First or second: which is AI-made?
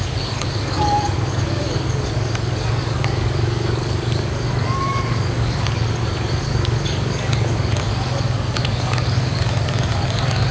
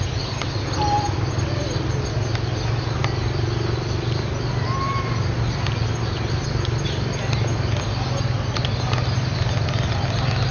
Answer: first